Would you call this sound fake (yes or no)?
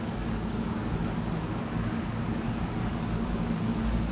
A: yes